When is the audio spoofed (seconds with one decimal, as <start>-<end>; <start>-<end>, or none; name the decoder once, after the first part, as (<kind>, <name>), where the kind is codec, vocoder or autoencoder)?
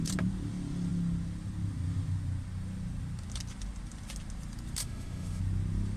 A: 4.8-5.4 (autoencoder, DAC-VAE)